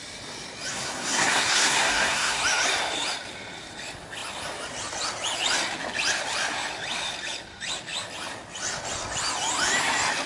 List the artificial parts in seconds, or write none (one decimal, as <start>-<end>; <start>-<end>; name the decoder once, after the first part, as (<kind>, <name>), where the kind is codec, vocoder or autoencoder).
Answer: 0.7-2.4 (codec, SNAC)